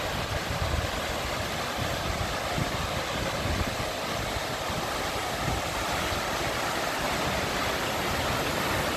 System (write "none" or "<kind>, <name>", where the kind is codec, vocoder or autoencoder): none